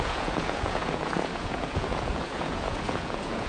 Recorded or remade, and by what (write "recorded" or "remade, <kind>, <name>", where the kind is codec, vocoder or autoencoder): remade, vocoder, Vocos